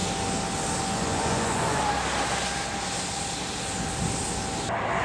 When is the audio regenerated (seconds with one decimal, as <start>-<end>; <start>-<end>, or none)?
0.8-1.8